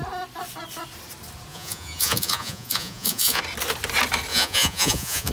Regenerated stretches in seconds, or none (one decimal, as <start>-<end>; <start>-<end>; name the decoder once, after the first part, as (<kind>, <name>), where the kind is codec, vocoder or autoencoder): 1.5-3.4 (vocoder, Vocos); 4.3-5.3